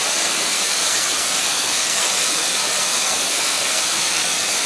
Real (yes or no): no